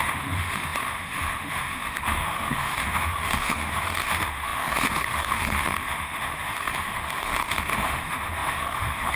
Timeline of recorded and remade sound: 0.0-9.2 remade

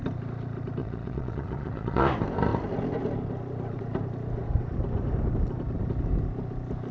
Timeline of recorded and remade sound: 0.0-0.8 recorded; 0.8-2.0 remade; 2.0-6.9 recorded